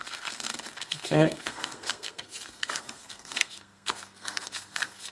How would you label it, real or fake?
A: fake